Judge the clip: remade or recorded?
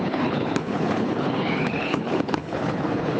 remade